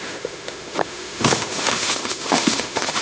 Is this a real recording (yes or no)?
no